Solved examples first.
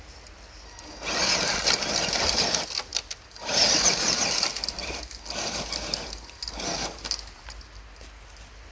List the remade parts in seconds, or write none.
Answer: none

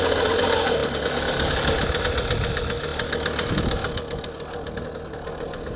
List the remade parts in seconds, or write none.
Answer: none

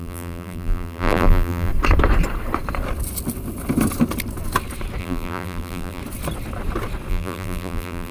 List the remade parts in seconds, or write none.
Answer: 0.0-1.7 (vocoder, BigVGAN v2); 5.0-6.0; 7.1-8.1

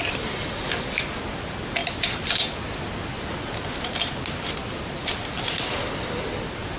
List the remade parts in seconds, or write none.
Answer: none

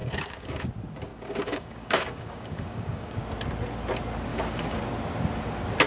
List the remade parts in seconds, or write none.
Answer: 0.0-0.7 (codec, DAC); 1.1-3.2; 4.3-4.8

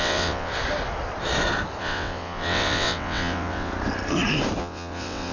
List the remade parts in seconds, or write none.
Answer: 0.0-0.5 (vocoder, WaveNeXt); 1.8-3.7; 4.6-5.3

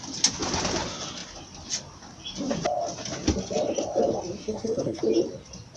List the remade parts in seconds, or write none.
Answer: 4.4-5.0 (codec, SNAC)